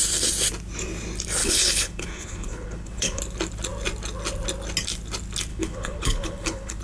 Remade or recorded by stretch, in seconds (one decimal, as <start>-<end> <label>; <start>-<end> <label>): 0.0-1.4 recorded; 1.4-3.2 remade; 3.2-5.5 recorded; 5.5-6.8 remade

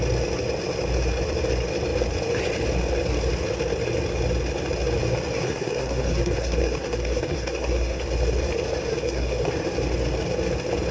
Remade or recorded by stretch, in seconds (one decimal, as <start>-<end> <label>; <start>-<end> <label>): 0.0-5.4 recorded; 5.4-8.0 remade; 8.0-8.9 recorded; 8.9-9.5 remade; 9.5-10.9 recorded

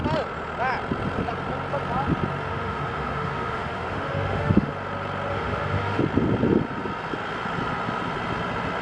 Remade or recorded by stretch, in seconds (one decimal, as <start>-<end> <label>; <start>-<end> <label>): 0.0-2.4 recorded; 2.4-4.7 remade; 4.7-5.3 recorded; 5.3-6.0 remade; 6.0-8.8 recorded